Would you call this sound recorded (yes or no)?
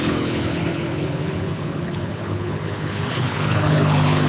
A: no